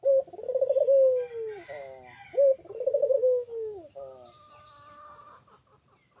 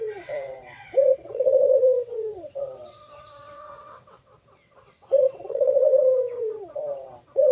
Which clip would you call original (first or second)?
first